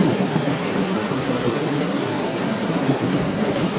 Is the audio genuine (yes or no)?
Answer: no